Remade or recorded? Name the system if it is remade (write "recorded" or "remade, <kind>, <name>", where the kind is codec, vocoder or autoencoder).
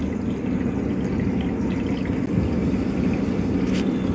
recorded